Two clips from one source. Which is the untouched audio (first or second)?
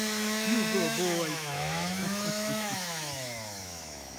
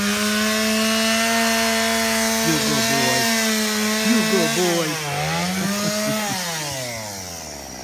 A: second